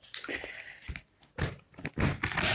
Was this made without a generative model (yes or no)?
yes